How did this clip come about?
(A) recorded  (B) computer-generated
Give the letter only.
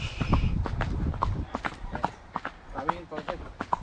A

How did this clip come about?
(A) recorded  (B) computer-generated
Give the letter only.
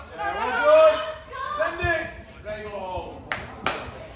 A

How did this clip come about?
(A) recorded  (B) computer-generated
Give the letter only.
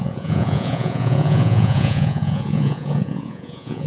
B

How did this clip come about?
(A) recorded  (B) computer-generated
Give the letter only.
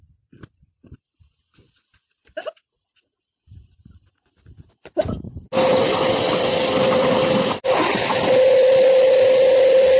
A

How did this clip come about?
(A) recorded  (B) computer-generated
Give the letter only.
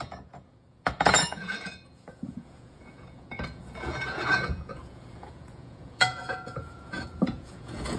B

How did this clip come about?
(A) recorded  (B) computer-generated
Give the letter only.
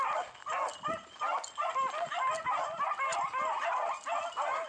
A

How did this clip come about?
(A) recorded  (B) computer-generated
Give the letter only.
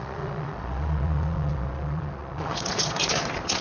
B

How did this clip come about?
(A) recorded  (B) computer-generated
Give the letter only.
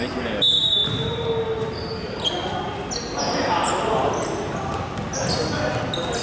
A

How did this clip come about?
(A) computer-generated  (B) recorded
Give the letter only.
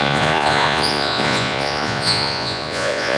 A